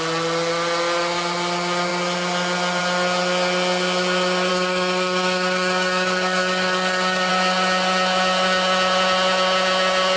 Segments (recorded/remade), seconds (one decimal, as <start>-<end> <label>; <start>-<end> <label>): 0.0-4.5 recorded; 4.5-7.3 remade; 7.3-10.2 recorded